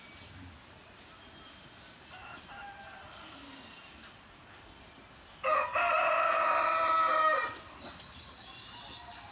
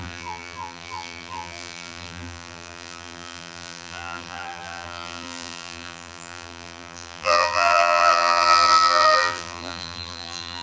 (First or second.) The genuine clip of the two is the first